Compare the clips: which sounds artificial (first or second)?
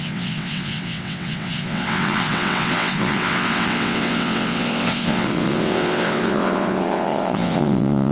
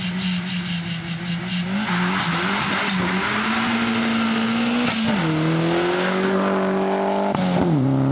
first